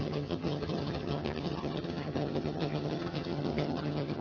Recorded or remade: remade